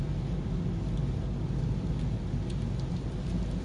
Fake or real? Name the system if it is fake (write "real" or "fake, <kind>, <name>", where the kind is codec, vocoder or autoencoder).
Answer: real